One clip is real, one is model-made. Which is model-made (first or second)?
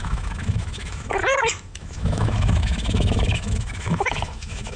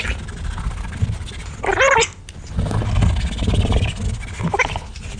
first